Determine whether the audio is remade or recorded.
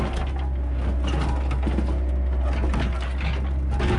recorded